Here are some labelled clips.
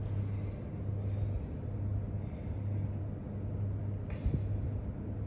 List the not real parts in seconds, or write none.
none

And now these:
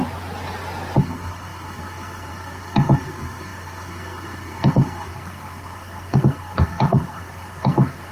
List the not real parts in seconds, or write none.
1.0-8.1

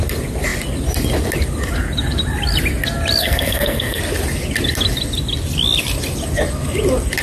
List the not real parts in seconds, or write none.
3.2-4.0